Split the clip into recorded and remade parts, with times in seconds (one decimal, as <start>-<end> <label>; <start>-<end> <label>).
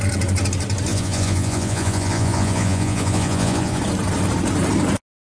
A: 0.0-0.9 recorded; 0.9-3.8 remade; 3.8-5.2 recorded